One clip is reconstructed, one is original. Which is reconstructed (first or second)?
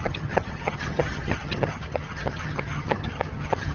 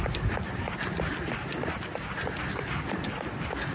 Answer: first